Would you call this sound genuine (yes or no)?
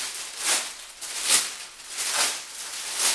yes